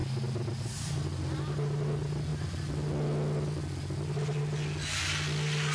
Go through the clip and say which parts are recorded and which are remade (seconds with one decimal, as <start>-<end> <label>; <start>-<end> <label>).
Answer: 0.0-5.7 recorded